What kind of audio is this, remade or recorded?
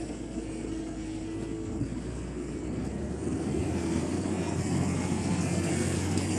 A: remade